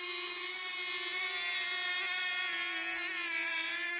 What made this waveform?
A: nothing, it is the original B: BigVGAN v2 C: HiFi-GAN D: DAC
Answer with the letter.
A